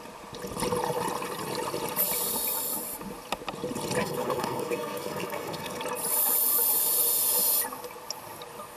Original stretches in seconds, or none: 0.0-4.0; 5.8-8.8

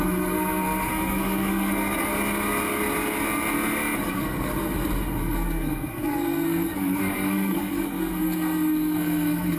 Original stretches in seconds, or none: 2.1-4.1; 4.5-5.2